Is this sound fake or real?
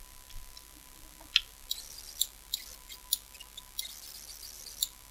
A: real